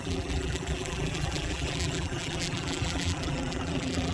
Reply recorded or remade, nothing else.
remade